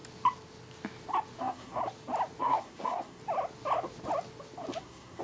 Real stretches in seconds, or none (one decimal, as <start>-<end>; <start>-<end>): 0.0-1.4; 1.8-2.4; 3.2-4.8